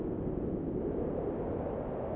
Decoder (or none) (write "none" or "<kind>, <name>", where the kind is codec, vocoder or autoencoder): none